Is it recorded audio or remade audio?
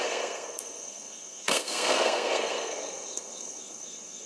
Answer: remade